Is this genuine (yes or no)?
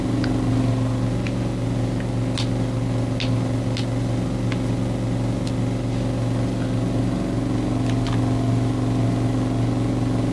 yes